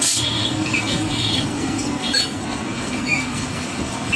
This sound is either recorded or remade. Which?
remade